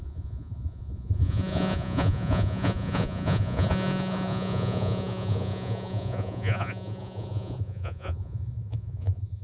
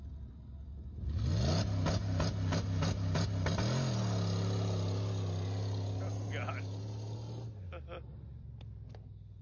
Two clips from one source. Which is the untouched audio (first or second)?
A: second